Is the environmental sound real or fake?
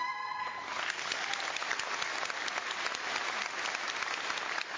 real